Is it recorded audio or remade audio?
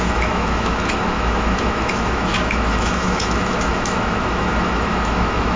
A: remade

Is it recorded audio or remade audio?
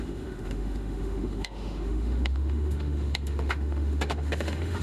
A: remade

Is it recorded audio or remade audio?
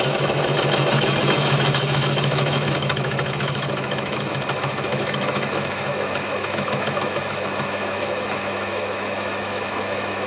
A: remade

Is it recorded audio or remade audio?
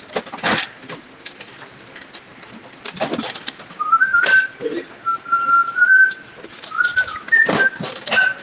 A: recorded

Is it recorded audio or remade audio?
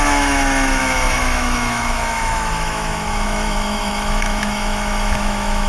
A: remade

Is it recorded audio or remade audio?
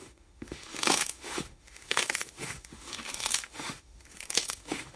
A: remade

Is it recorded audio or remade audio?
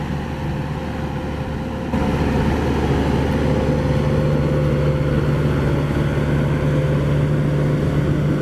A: recorded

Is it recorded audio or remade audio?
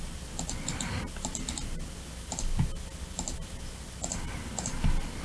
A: recorded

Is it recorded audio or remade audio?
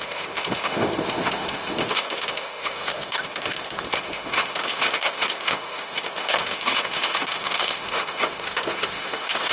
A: remade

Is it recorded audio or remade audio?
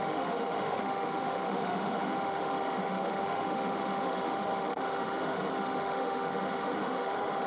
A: remade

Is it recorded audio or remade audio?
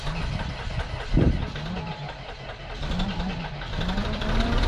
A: recorded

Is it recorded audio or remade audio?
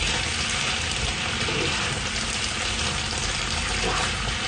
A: recorded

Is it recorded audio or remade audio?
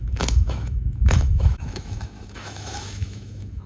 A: remade